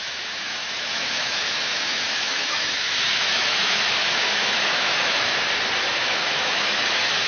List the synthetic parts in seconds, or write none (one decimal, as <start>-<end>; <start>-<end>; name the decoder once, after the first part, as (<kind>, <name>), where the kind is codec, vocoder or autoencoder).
0.0-5.3 (autoencoder, DAC-VAE); 5.9-7.3